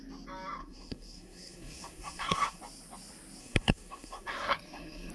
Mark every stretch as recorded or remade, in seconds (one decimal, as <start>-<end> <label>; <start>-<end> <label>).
0.0-0.6 recorded; 0.6-2.6 remade; 2.6-3.4 recorded; 3.4-5.1 remade